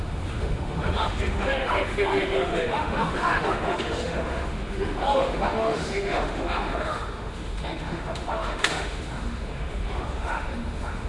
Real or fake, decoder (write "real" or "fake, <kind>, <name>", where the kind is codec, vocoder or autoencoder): fake, autoencoder, DAC-VAE